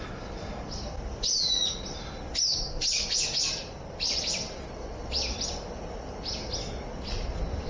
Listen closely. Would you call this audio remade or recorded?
recorded